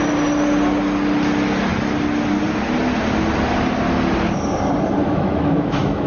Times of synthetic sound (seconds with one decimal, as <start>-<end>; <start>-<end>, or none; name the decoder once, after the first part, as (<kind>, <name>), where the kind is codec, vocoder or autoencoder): 5.0-6.1 (autoencoder, DAC-VAE)